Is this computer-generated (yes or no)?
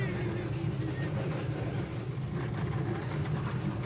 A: no